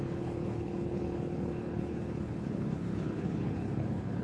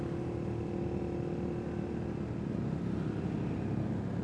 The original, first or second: second